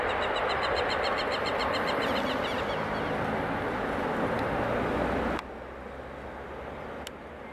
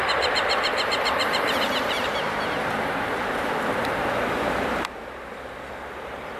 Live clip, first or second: first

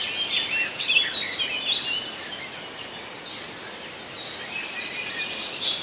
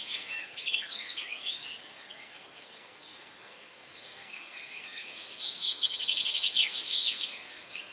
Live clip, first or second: first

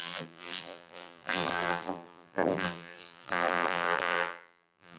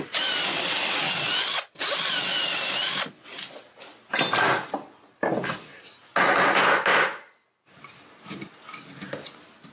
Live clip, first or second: second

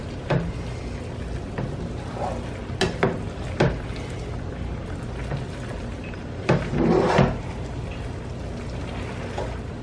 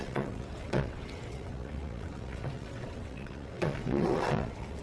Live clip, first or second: first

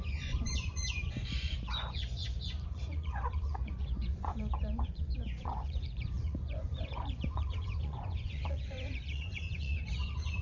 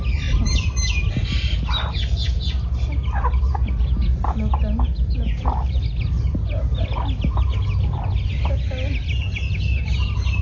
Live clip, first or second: second